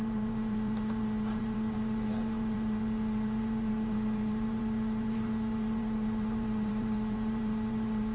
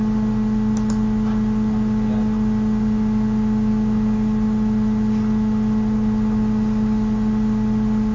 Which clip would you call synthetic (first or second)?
first